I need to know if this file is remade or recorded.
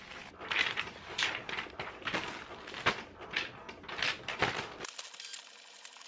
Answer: recorded